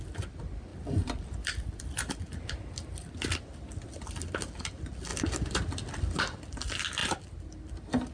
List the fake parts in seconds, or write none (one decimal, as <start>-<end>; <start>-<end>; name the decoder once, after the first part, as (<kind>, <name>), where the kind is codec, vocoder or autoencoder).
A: 0.7-2.1 (vocoder, BigVGAN v2)